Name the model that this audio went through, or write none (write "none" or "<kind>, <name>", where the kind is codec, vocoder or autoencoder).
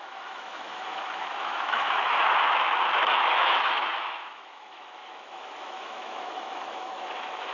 autoencoder, DAC-VAE